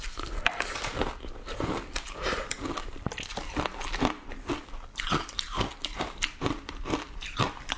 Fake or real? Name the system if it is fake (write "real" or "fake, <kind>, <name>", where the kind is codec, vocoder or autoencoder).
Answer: fake, vocoder, BigVGAN v2